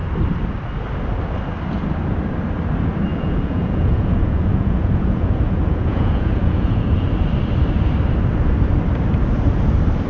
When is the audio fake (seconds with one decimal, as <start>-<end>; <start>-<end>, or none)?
3.1-7.1